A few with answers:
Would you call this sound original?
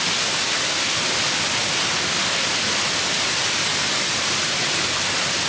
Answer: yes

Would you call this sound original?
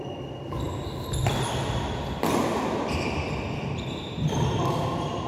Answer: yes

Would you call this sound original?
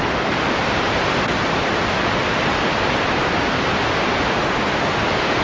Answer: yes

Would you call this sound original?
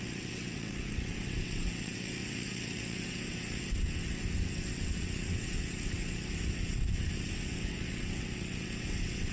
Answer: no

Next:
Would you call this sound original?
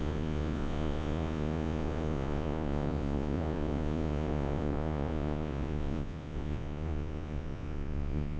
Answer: no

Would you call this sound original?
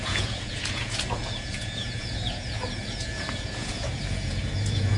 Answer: no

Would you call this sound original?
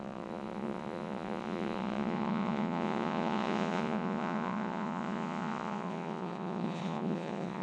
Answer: no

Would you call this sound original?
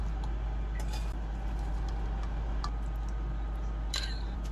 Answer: yes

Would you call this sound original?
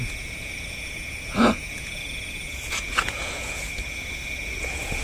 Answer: no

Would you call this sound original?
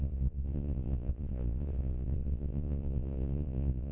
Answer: no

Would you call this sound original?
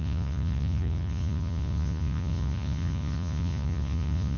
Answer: no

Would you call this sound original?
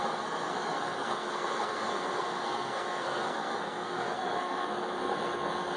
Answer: no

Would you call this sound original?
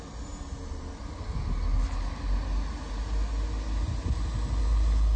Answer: yes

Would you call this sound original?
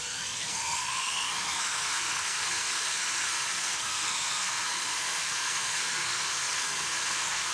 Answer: no